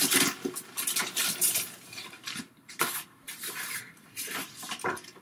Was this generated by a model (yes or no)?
no